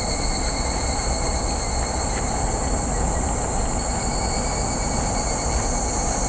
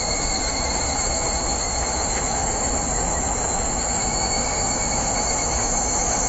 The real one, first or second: first